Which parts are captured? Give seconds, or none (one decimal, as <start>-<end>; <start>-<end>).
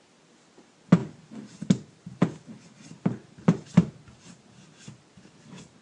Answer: 0.0-5.8